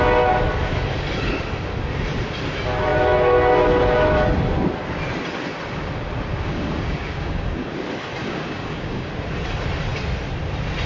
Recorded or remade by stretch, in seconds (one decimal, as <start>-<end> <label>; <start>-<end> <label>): 0.0-6.3 recorded; 6.3-7.7 remade; 7.7-8.2 recorded; 8.2-9.1 remade; 9.1-10.9 recorded